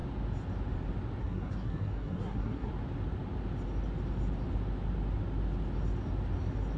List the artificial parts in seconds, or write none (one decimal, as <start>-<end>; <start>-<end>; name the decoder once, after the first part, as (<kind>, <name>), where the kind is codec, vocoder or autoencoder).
1.2-2.7 (codec, SNAC)